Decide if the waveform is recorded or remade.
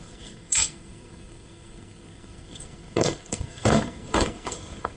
remade